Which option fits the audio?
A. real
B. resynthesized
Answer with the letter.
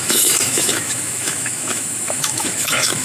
B